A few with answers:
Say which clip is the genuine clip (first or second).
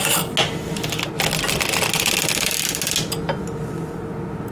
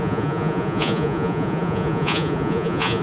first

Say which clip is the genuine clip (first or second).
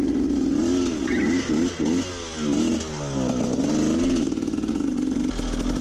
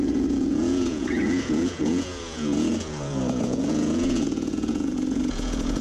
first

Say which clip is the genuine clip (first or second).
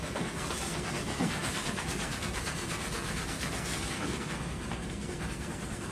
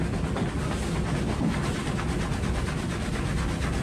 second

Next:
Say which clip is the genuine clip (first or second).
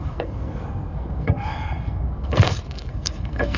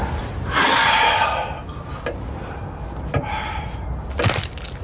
second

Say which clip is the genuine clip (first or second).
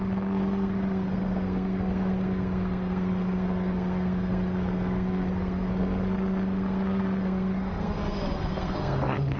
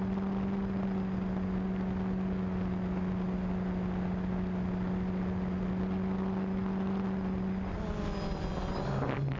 second